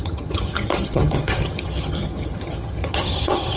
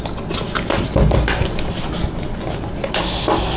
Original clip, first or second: second